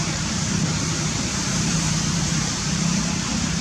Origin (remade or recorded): remade